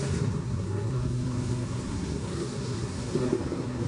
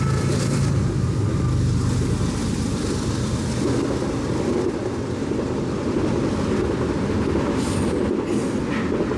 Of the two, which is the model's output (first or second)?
first